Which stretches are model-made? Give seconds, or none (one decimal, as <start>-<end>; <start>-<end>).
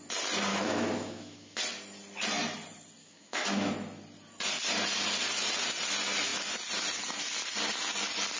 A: 0.5-1.6; 3.0-3.7